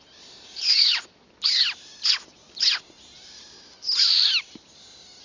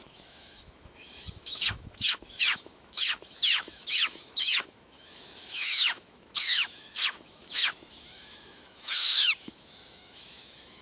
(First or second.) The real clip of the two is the first